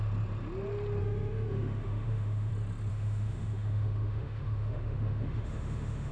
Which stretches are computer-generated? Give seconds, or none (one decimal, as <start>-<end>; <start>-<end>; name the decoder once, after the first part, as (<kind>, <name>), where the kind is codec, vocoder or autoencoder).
1.0-2.5 (autoencoder, DAC-VAE); 2.9-6.1